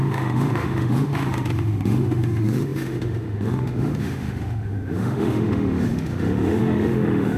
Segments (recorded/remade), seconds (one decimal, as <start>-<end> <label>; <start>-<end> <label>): 0.0-7.4 remade